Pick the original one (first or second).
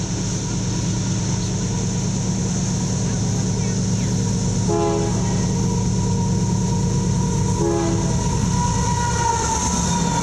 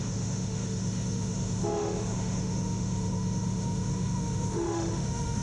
first